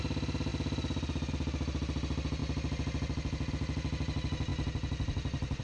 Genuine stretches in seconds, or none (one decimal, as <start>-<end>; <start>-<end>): 0.0-5.6